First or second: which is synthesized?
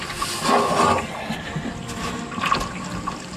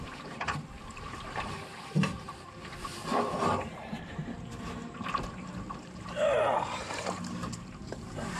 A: second